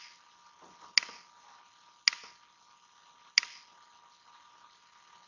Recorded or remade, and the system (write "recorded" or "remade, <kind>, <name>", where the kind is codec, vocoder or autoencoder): recorded